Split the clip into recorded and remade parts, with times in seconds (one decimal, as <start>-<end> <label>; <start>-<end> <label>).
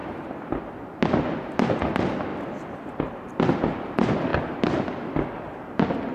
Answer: 0.0-6.1 recorded